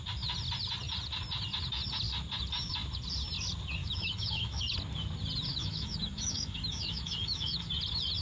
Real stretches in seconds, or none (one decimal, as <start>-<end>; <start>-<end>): 0.0-3.8; 4.6-5.5; 7.7-8.2